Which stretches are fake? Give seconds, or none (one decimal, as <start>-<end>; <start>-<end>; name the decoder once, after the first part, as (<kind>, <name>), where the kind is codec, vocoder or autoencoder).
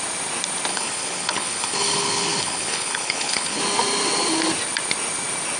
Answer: 0.7-3.6 (codec, HILCodec)